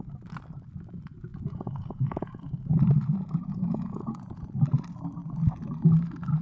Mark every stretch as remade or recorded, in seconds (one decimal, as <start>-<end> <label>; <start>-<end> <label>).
0.0-1.3 recorded; 1.3-4.4 remade; 4.4-6.4 recorded